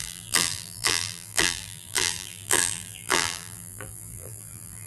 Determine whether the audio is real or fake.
fake